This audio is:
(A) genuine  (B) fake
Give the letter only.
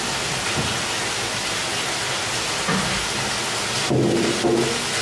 A